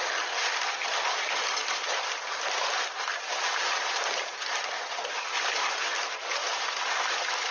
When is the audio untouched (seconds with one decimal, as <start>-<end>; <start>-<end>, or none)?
1.6-5.5; 6.4-7.0